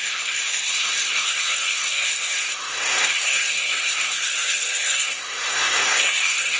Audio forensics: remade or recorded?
remade